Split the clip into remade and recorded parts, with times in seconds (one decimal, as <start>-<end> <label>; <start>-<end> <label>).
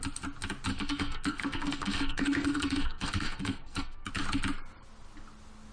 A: 0.0-0.7 recorded; 0.7-4.1 remade; 4.1-5.7 recorded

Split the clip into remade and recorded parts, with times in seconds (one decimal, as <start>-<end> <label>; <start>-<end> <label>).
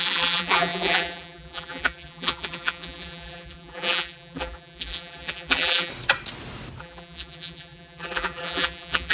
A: 0.0-5.9 remade; 5.9-6.8 recorded; 6.8-9.1 remade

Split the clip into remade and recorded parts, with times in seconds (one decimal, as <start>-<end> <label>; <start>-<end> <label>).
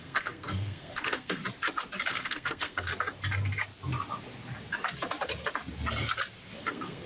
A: 0.0-1.4 remade; 1.4-2.1 recorded; 2.1-2.9 remade; 2.9-6.6 recorded; 6.6-7.1 remade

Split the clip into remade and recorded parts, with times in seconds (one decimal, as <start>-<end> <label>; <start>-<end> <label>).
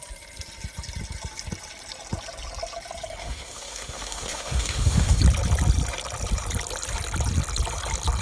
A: 0.0-3.2 recorded; 3.2-5.2 remade; 5.2-8.2 recorded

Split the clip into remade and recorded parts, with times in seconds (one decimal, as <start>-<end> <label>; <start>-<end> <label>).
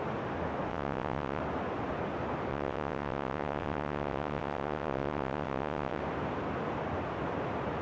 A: 0.0-0.7 recorded; 0.7-1.4 remade; 1.4-2.5 recorded; 2.5-6.0 remade; 6.0-7.8 recorded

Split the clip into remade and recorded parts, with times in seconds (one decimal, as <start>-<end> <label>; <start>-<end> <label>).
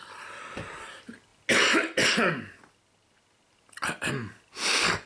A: 0.0-5.1 recorded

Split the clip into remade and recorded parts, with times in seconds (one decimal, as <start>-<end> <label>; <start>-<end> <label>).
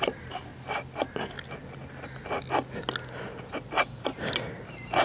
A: 0.0-0.5 remade; 0.5-3.3 recorded; 3.3-5.0 remade